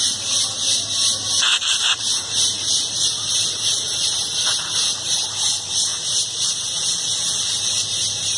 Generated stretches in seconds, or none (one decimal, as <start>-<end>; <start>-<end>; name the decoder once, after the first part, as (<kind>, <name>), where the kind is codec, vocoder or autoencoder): 1.5-5.3 (vocoder, BigVGAN v2); 5.9-7.0